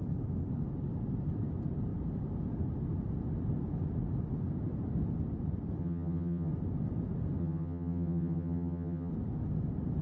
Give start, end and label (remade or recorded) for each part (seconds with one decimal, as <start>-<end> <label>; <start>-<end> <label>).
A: 0.0-5.8 recorded; 5.8-6.5 remade; 6.5-7.4 recorded; 7.4-9.1 remade; 9.1-10.0 recorded